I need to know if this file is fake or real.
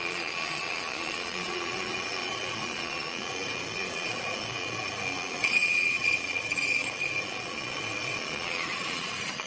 fake